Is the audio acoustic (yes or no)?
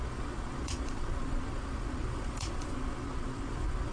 no